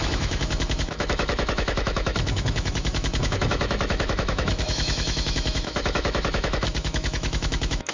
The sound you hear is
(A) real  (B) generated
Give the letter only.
B